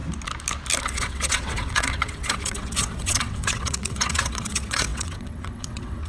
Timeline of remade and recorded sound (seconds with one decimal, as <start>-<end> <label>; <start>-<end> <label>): 0.0-0.8 recorded; 0.8-6.1 remade